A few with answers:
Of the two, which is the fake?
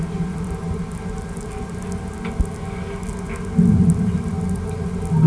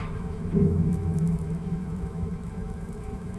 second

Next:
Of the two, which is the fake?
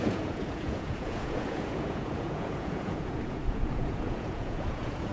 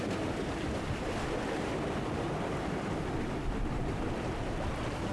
first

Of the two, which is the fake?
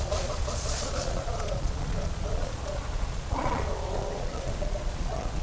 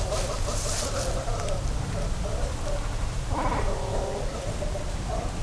first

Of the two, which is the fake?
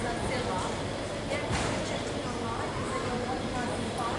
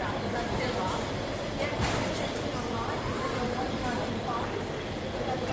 second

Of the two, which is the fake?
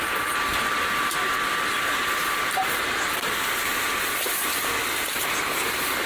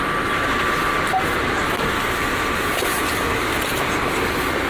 first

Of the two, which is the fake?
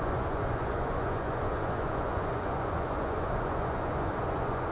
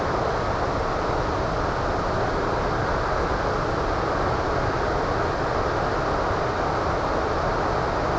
first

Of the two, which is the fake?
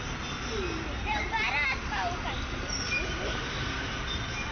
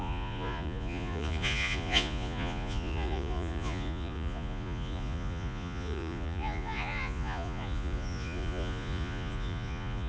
second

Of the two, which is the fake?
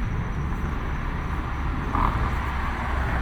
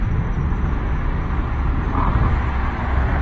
second